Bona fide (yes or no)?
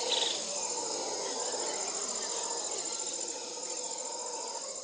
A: yes